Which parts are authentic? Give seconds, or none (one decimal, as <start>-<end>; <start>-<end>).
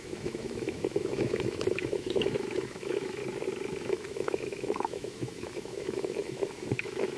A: 3.2-3.8